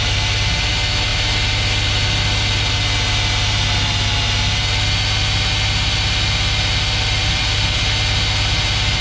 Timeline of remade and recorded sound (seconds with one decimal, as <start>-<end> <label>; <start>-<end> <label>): 0.0-9.0 recorded